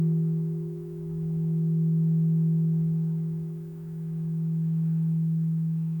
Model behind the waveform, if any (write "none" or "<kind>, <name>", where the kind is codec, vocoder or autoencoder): autoencoder, DAC-VAE